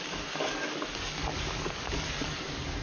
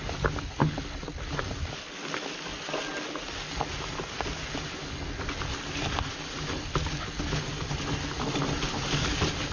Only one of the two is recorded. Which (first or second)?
second